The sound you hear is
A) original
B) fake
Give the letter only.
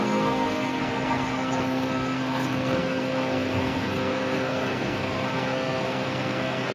B